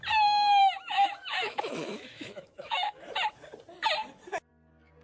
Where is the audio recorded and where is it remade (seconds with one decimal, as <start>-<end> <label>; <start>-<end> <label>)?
0.0-0.6 recorded; 0.6-3.2 remade; 3.2-5.0 recorded